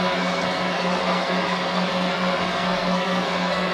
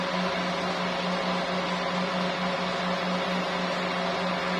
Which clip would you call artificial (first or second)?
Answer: first